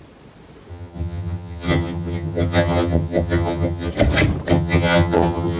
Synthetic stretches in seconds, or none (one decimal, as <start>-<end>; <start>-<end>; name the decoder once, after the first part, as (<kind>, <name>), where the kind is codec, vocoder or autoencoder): 0.7-3.9 (vocoder, HiFi-GAN); 4.5-5.6